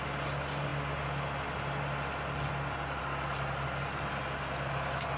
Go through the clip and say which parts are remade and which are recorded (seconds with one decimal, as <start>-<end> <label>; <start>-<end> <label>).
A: 0.0-5.2 recorded